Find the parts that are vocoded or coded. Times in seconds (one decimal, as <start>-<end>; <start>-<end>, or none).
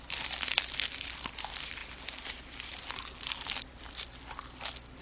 none